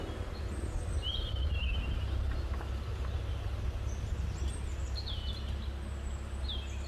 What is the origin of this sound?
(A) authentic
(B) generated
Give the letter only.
A